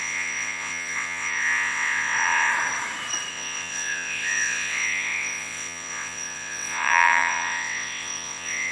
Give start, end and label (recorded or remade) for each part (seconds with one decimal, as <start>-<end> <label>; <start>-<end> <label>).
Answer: 0.0-2.5 remade; 2.5-3.3 recorded; 3.3-8.7 remade